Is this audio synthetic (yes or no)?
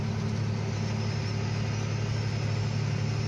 no